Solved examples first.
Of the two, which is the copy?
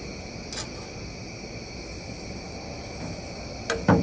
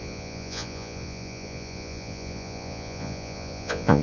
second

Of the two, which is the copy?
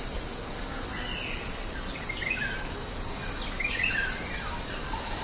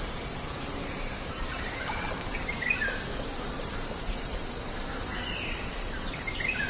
second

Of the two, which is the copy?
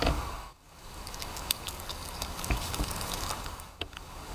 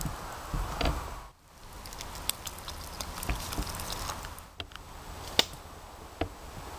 first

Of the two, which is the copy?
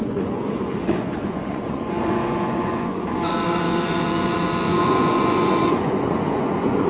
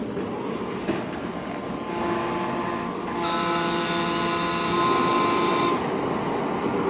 first